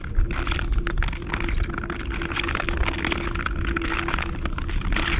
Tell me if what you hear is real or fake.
real